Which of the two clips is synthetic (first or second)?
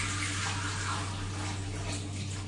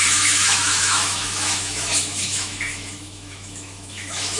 second